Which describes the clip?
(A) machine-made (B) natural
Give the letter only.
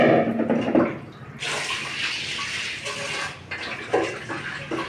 B